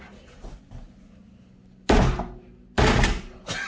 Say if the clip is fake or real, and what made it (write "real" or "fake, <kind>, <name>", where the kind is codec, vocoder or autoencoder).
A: real